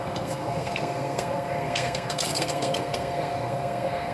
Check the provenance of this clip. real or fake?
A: fake